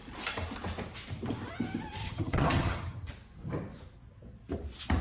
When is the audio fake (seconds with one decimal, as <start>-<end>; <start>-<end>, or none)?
2.0-3.1